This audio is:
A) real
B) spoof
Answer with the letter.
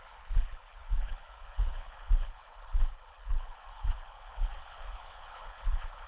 B